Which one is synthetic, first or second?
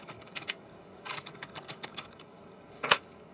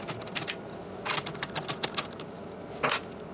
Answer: first